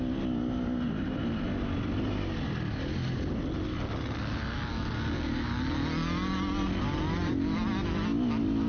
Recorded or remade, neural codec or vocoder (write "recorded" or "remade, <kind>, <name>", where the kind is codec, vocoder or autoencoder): recorded